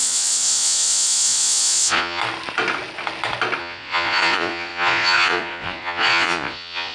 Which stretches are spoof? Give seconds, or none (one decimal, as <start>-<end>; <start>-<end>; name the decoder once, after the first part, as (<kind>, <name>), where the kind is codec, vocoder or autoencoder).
0.0-2.2 (vocoder, Vocos); 3.6-6.9